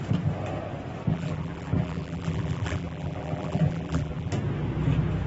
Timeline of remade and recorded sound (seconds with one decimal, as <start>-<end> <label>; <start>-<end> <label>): 0.0-1.1 recorded; 1.1-4.3 remade; 4.3-5.3 recorded